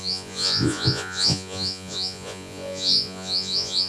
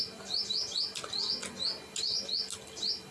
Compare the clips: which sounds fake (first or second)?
first